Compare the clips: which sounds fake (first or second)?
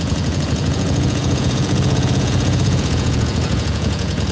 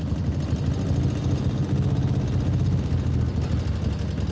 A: first